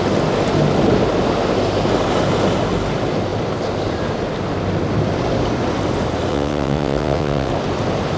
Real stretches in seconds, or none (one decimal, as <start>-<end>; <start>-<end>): 0.0-6.3; 7.5-8.2